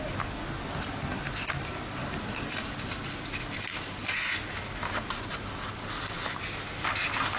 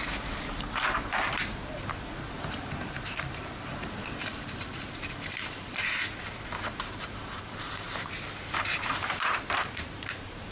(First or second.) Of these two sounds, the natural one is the first